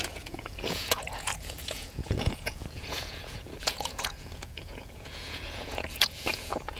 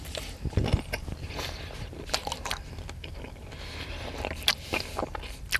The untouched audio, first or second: second